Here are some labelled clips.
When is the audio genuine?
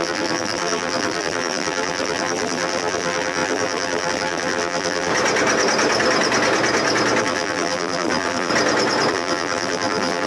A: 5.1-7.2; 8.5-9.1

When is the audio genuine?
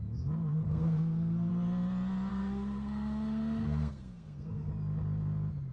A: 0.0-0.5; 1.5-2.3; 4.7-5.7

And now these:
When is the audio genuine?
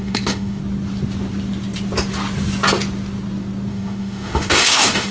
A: 0.6-3.7